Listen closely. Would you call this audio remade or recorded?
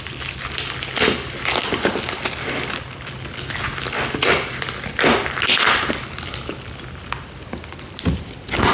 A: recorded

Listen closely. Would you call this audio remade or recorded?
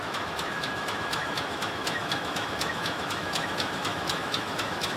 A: remade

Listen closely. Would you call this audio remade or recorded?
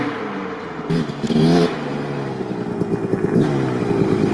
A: recorded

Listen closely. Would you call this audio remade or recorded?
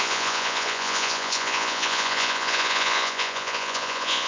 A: remade